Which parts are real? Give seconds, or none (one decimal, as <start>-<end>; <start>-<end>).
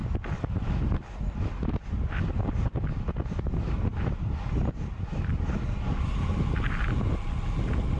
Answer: 0.0-8.0